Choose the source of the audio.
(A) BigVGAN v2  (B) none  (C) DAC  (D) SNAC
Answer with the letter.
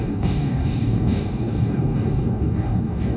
C